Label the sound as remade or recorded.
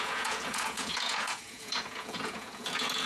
remade